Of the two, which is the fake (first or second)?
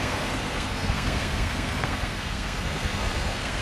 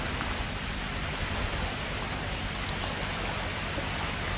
first